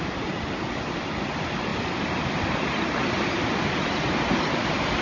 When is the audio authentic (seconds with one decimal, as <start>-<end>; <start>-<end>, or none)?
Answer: 0.0-5.0